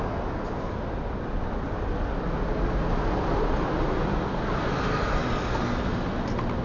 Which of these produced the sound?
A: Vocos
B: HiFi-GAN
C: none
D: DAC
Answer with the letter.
C